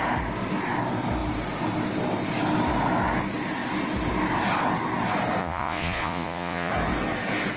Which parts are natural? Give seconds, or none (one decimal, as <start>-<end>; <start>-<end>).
0.0-5.4; 6.7-7.6